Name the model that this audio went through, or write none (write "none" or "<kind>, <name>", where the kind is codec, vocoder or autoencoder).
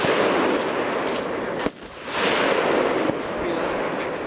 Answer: none